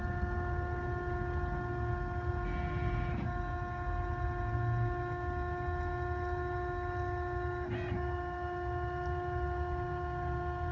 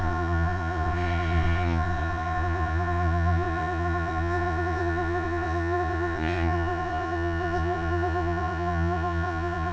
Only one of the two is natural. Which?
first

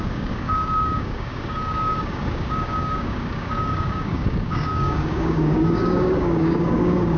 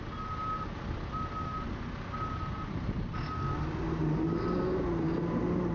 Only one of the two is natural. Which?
second